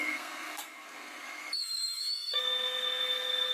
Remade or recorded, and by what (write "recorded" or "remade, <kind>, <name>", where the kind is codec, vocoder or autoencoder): remade, codec, SNAC